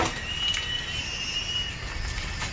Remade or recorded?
recorded